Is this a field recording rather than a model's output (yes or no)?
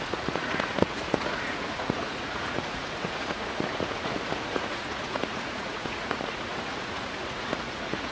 no